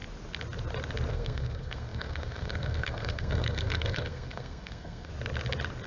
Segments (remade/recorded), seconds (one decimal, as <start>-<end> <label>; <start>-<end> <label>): 0.0-1.1 recorded; 1.1-5.1 remade; 5.1-5.9 recorded